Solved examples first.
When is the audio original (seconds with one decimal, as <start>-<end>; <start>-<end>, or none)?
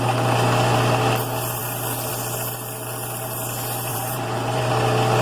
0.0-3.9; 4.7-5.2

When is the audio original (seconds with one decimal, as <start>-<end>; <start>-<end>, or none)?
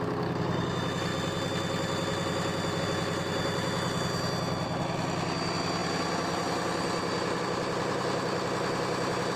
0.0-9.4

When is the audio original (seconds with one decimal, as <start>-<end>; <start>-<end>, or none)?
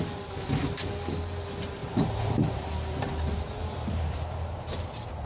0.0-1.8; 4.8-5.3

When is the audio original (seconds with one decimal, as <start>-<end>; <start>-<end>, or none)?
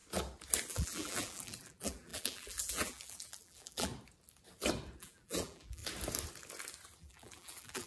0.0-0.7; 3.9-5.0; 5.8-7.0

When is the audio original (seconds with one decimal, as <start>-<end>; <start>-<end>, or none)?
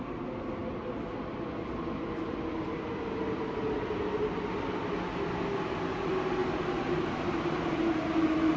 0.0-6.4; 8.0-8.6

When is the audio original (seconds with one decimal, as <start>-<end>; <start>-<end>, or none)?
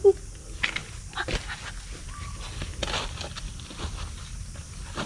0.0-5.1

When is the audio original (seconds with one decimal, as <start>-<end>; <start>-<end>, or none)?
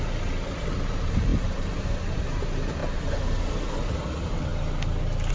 4.5-5.3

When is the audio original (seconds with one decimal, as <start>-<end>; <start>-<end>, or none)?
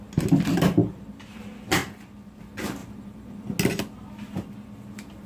0.0-0.8; 1.4-2.8; 3.5-5.3